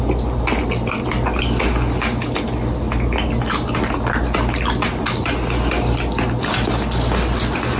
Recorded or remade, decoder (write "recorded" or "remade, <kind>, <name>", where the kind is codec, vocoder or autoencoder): recorded